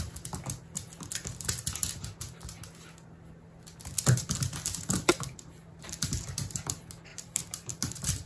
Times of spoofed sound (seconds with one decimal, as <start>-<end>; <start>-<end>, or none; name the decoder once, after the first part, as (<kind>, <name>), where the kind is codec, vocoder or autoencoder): 7.1-8.3 (vocoder, BigVGAN v2)